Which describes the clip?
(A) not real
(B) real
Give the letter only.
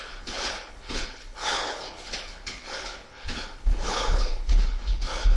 A